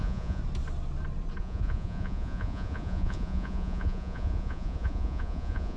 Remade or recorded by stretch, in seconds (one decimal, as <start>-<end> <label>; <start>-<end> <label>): 0.0-0.4 remade; 0.4-1.4 recorded; 1.4-5.8 remade